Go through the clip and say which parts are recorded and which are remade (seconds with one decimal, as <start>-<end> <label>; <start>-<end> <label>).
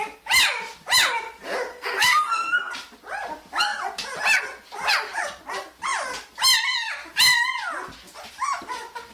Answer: 0.0-1.7 recorded; 1.7-2.7 remade; 2.7-9.1 recorded